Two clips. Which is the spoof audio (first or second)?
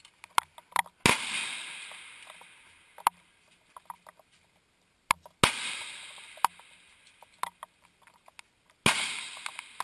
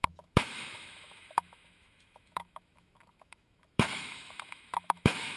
second